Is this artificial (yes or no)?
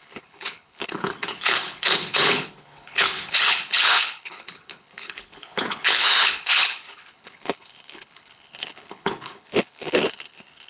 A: yes